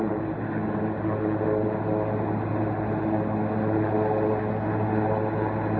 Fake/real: real